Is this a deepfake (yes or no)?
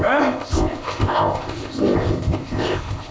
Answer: yes